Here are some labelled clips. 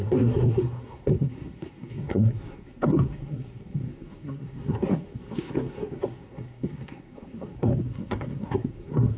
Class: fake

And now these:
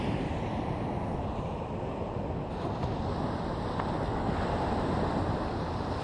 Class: real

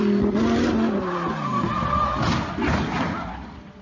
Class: real